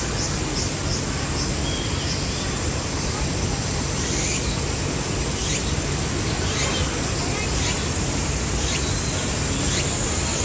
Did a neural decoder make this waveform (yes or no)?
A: no